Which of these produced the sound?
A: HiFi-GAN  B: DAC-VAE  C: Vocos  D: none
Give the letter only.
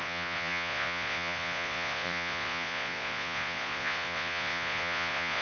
C